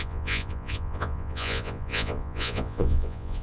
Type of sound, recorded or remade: remade